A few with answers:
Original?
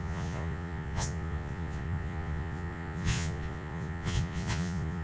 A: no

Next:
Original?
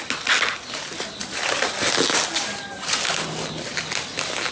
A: yes